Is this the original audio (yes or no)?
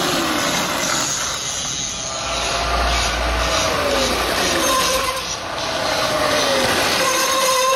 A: yes